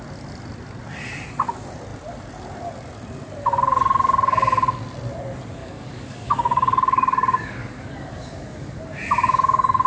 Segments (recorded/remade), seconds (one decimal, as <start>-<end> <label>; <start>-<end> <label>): 0.0-5.6 recorded; 5.6-8.8 remade; 8.8-9.9 recorded